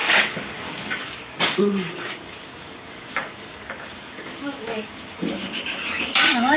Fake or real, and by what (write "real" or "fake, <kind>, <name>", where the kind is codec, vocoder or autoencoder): fake, codec, DAC